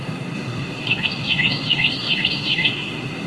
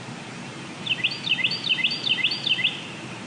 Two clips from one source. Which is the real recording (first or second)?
second